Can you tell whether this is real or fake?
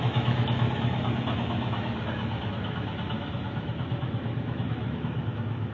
fake